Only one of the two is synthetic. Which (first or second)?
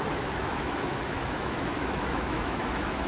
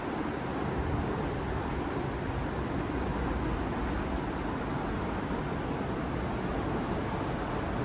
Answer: first